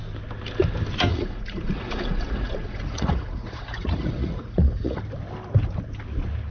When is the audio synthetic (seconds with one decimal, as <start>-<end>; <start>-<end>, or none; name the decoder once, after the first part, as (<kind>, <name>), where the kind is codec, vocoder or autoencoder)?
1.1-5.0 (vocoder, Vocos)